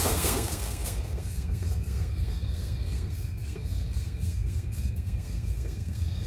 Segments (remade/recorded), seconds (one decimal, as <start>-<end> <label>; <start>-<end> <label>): 0.0-6.3 remade